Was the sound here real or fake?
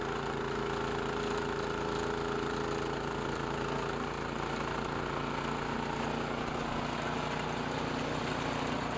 real